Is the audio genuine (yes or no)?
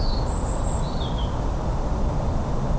yes